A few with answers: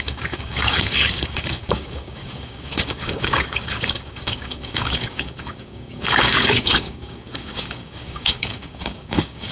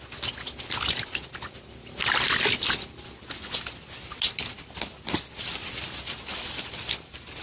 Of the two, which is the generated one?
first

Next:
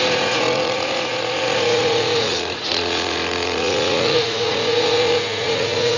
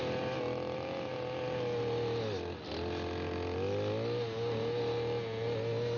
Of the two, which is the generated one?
first